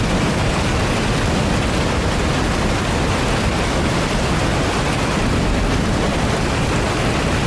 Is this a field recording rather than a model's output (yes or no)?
yes